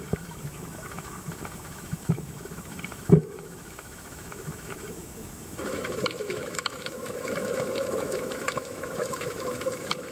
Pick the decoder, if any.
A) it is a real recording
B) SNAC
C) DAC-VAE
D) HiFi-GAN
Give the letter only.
C